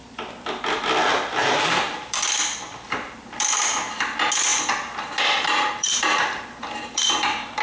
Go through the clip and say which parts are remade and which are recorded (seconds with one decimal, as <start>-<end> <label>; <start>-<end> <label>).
0.0-1.4 recorded; 1.4-3.6 remade; 3.6-4.5 recorded; 4.5-7.0 remade; 7.0-7.6 recorded